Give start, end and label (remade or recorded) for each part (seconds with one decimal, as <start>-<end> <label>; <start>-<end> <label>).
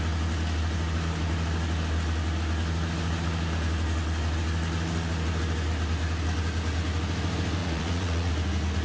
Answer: 0.0-7.6 recorded; 7.6-8.3 remade; 8.3-8.8 recorded